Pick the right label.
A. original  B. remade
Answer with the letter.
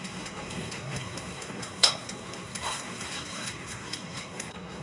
B